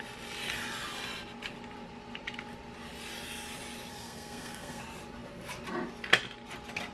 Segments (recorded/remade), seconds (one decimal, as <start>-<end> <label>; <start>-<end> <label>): 0.0-3.9 recorded; 3.9-4.8 remade; 4.8-6.9 recorded